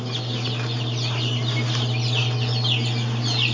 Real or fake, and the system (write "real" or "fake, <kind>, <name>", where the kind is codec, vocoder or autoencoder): real